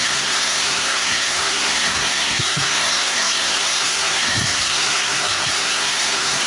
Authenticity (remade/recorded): remade